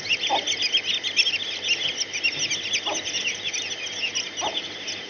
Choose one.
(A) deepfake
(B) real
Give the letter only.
B